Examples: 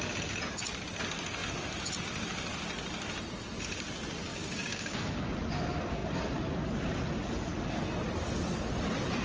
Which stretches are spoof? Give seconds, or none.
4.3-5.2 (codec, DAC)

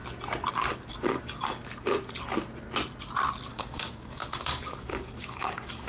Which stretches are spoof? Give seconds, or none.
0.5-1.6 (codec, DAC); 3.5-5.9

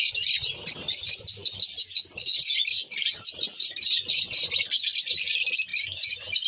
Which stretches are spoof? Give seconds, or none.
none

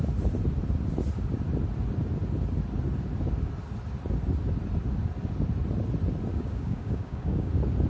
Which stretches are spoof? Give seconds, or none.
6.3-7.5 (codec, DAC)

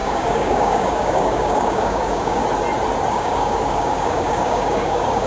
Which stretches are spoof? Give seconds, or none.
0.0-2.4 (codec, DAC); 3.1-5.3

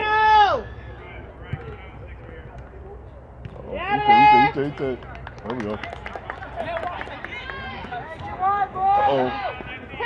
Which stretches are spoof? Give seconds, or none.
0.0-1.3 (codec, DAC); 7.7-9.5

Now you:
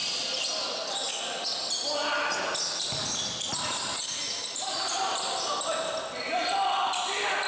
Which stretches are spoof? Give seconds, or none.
none

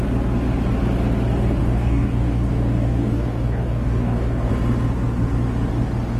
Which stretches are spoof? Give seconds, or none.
1.6-4.5 (codec, DAC)